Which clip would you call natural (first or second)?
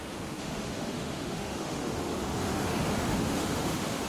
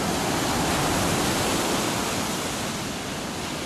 second